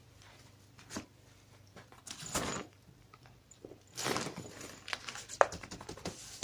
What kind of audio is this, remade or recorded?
recorded